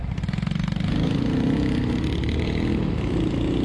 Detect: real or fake real